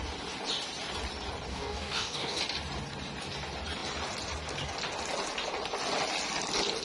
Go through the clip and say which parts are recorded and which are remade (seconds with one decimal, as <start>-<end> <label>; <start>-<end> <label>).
0.0-1.5 recorded; 1.5-2.4 remade; 2.4-6.8 recorded